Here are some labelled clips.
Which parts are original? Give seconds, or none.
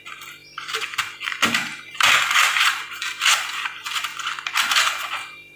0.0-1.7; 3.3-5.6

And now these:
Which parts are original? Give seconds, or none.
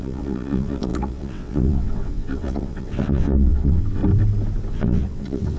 4.0-4.7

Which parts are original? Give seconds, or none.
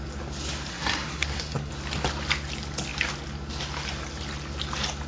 0.0-0.7; 1.7-5.1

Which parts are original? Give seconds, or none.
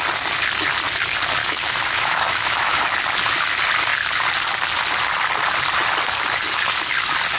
0.0-1.4; 2.8-7.4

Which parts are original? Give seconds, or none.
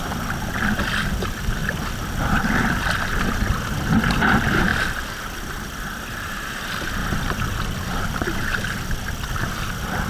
0.0-1.6; 3.2-4.7; 6.6-7.0; 7.9-10.1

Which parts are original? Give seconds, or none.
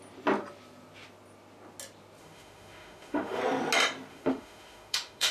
0.0-2.2; 3.4-4.1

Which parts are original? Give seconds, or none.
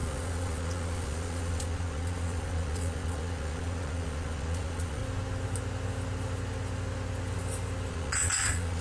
5.0-7.9